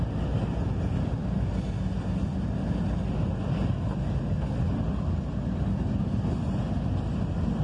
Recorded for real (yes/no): yes